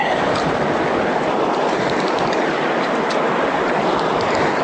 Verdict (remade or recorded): recorded